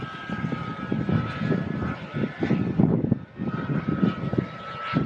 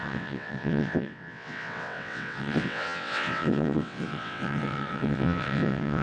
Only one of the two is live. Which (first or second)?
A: first